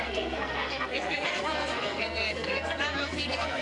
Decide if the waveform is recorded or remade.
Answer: remade